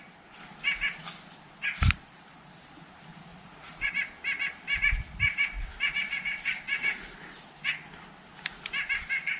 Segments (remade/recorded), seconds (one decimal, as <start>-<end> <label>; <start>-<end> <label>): 0.0-3.3 recorded; 3.3-3.9 remade; 3.9-9.4 recorded